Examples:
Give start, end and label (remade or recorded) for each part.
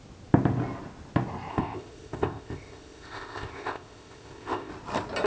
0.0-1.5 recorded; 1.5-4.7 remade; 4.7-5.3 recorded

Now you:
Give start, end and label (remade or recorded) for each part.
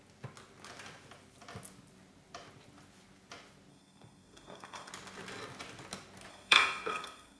0.0-3.7 recorded; 3.7-4.9 remade; 4.9-6.3 recorded; 6.3-7.4 remade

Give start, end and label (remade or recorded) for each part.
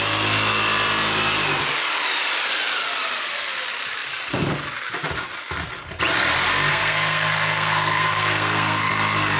0.0-6.7 recorded; 6.7-8.9 remade; 8.9-9.4 recorded